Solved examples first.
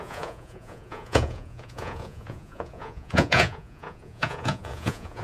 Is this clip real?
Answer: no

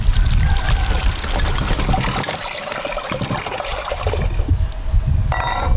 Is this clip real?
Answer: yes